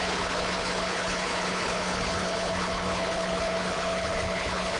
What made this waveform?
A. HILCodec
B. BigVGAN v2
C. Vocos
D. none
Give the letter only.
A